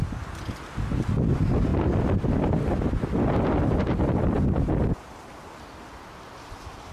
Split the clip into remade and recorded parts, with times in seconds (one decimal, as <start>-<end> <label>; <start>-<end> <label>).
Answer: 0.0-6.9 recorded